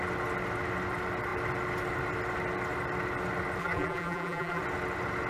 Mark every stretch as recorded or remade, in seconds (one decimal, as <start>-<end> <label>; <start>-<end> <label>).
0.0-3.6 recorded; 3.6-4.6 remade; 4.6-5.3 recorded